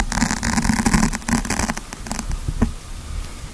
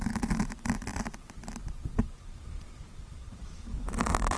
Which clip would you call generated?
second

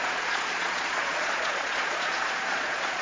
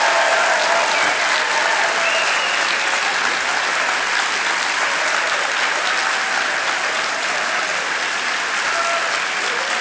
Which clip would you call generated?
first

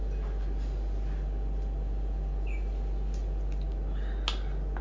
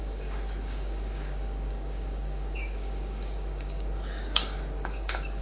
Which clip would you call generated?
second